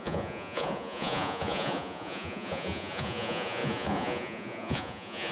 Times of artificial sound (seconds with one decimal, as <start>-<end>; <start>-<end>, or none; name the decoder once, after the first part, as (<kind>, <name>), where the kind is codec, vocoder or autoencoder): 0.0-5.3 (vocoder, Vocos)